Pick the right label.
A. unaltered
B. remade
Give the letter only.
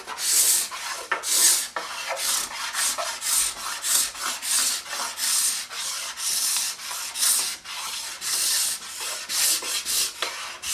A